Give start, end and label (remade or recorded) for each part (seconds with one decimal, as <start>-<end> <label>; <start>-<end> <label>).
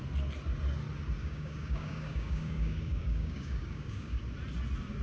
0.0-1.2 recorded; 1.2-4.2 remade; 4.2-5.0 recorded